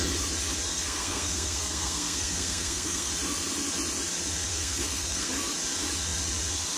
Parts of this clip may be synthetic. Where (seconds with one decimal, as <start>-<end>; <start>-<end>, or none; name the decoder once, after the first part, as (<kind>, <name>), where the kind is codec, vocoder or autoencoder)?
0.7-3.1 (codec, SNAC); 4.5-5.3